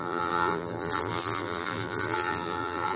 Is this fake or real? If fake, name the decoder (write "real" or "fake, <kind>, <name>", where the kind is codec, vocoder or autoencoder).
fake, vocoder, BigVGAN v2